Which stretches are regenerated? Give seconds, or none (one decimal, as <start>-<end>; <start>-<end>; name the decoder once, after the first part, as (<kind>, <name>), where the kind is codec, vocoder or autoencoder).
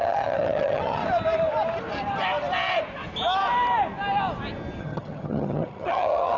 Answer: 0.0-1.0 (vocoder, HiFi-GAN); 4.8-6.4